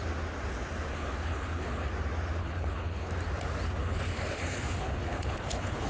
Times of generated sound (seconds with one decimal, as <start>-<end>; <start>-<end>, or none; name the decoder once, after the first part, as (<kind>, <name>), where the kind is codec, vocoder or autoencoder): 0.9-1.9 (codec, HILCodec); 2.4-3.1; 3.8-5.9